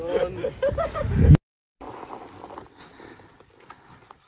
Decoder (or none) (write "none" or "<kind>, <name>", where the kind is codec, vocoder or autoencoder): none